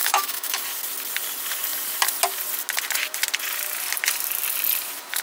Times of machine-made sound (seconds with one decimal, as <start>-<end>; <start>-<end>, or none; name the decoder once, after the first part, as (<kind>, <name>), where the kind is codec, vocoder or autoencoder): 0.0-0.6 (autoencoder, DAC-VAE)